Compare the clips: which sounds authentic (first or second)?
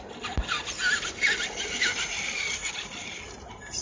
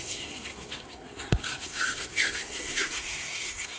first